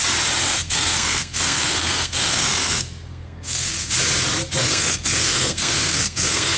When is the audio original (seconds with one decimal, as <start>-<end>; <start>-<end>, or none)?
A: 0.0-0.5; 3.9-4.6